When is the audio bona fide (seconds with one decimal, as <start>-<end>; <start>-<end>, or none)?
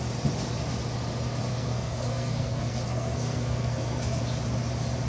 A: 0.0-1.5; 4.2-5.1